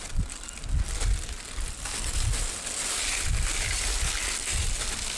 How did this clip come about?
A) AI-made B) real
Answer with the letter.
B